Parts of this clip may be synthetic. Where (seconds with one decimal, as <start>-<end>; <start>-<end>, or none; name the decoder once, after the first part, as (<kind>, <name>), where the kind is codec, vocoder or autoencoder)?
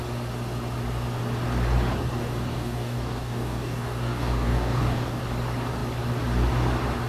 2.2-5.2 (codec, DAC)